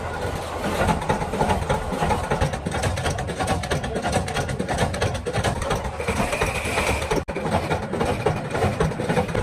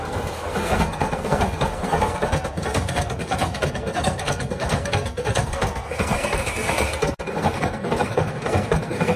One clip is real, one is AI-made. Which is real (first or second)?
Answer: first